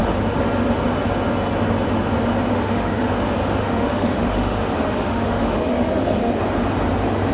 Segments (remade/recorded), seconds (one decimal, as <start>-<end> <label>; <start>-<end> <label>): 0.0-2.5 recorded; 2.5-3.1 remade; 3.1-3.6 recorded; 3.6-6.3 remade; 6.3-7.3 recorded